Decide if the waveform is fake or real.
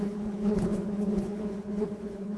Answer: fake